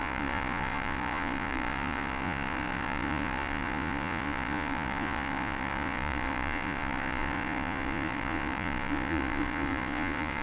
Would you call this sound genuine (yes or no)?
no